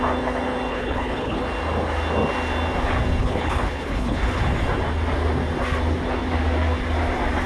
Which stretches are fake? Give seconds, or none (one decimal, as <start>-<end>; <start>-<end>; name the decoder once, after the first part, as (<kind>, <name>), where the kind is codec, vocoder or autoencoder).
0.7-1.4 (codec, HILCodec); 3.2-4.4